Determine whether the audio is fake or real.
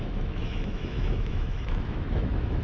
fake